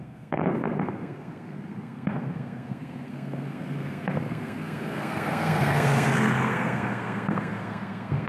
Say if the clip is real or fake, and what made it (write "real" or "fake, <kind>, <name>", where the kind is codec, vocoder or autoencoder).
fake, codec, SNAC